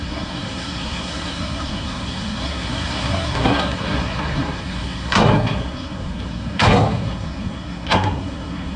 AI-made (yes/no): yes